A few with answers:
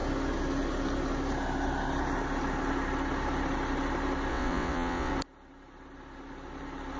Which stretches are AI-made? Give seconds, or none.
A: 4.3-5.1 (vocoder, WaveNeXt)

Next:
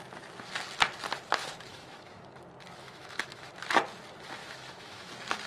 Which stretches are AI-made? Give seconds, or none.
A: 1.7-2.2 (autoencoder, DAC-VAE); 2.8-3.5; 4.4-5.1

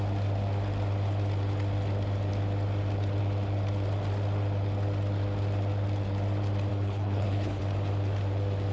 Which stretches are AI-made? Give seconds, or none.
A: 6.7-7.6 (codec, HILCodec)